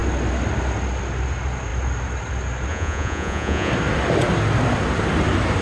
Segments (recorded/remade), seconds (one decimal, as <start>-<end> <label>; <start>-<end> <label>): 0.0-2.7 recorded; 2.7-3.7 remade; 3.7-5.6 recorded